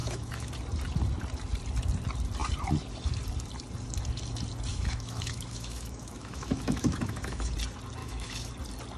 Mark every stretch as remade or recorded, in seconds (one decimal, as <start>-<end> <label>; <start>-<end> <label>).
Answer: 0.0-0.5 remade; 0.5-4.7 recorded; 4.7-7.5 remade; 7.5-8.0 recorded; 8.0-8.5 remade; 8.5-9.0 recorded